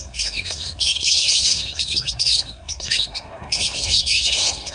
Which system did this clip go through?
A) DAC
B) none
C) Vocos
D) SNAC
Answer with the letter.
D